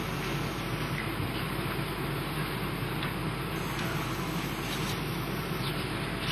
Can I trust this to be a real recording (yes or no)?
yes